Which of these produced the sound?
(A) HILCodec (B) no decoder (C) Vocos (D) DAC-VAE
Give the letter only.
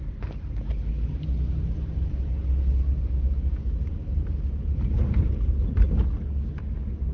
B